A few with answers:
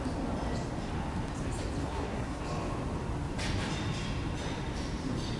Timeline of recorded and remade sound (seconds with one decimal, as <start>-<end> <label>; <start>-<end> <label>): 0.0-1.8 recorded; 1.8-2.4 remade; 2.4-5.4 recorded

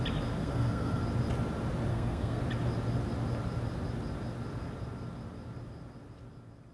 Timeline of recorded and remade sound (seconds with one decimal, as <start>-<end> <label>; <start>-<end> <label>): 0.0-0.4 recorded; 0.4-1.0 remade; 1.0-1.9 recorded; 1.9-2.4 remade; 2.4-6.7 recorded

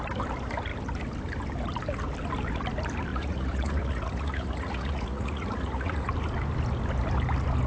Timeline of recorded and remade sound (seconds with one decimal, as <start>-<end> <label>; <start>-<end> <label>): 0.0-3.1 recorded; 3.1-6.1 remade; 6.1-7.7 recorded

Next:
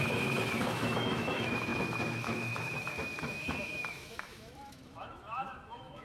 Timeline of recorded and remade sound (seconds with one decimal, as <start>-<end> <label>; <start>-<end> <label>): 0.0-6.0 remade